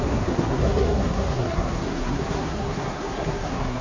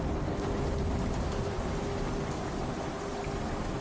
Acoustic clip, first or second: second